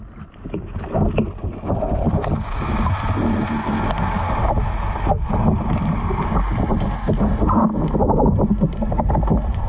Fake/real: real